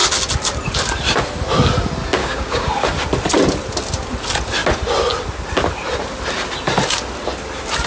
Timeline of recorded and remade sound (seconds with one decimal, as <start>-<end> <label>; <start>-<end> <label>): 0.0-2.2 recorded; 2.2-2.7 remade; 2.7-7.9 recorded